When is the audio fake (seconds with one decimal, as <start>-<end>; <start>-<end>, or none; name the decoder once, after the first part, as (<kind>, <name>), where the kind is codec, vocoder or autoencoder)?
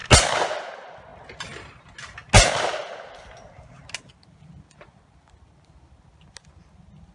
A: none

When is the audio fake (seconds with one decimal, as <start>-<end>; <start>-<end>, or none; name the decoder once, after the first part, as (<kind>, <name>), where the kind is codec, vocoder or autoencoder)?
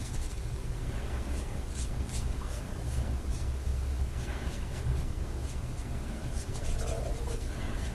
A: 0.0-6.7 (codec, SNAC); 7.3-7.9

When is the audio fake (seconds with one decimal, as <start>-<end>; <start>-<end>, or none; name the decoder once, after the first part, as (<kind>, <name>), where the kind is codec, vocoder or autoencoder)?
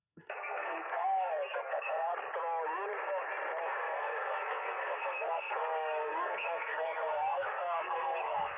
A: 0.0-2.1 (codec, SNAC); 3.7-8.6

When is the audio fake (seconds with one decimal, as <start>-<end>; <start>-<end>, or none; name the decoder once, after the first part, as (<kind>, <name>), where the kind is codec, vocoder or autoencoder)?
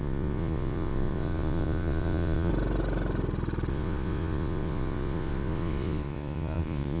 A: 0.0-2.5 (vocoder, Vocos); 3.7-7.0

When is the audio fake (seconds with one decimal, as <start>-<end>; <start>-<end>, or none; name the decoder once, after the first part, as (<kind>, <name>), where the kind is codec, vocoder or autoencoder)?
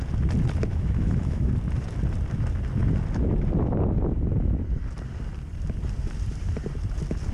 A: 0.7-1.5 (autoencoder, DAC-VAE)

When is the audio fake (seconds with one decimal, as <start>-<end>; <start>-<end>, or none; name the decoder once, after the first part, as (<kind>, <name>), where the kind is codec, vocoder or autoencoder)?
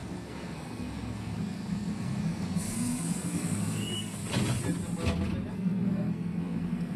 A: 0.0-4.2 (codec, SNAC); 5.5-7.0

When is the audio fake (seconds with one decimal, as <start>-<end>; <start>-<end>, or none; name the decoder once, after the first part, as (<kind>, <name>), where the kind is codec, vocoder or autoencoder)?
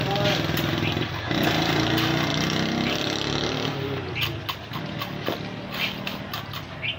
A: none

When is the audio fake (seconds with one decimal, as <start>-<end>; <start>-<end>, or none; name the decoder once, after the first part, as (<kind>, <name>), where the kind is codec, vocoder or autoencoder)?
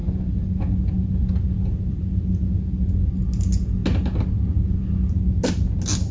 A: none